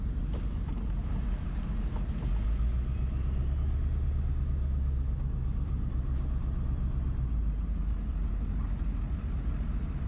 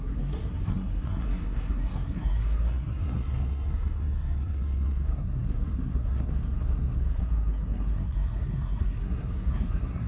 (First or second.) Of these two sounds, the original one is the first